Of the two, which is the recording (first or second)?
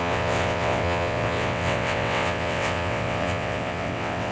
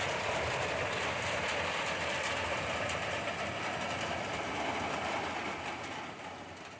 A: second